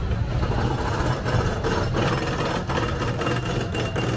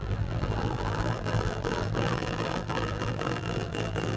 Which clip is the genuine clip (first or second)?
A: first